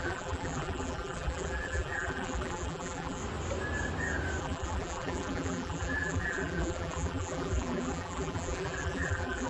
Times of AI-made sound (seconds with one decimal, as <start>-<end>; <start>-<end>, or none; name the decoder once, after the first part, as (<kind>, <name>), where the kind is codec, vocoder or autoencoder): 0.0-3.2 (vocoder, BigVGAN v2); 4.4-9.5